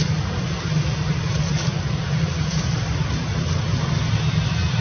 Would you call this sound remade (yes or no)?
no